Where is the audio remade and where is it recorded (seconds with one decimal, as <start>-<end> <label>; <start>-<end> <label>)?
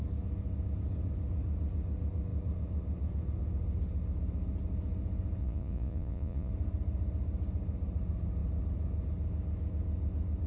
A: 0.0-5.4 recorded; 5.4-6.5 remade; 6.5-10.5 recorded